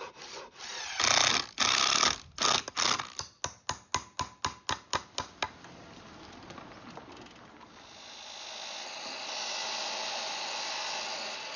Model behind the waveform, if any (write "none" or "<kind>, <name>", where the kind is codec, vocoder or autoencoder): none